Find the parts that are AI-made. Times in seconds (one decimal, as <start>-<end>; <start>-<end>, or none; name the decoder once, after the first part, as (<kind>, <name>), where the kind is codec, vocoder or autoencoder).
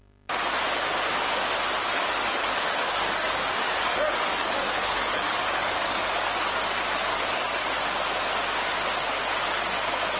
1.8-6.1 (codec, DAC); 7.1-7.7